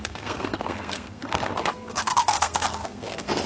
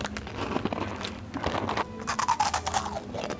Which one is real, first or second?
second